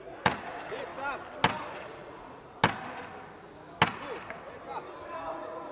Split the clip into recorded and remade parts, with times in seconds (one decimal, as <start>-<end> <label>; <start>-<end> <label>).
0.0-0.9 remade; 0.9-1.6 recorded; 1.6-2.6 remade; 2.6-5.3 recorded; 5.3-5.7 remade